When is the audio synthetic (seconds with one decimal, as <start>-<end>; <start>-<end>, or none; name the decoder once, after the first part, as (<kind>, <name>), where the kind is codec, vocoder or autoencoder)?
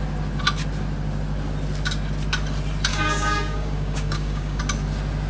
2.9-4.6 (codec, DAC)